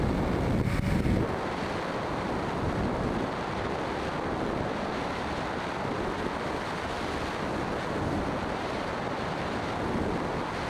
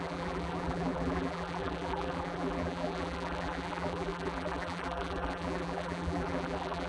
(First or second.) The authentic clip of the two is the first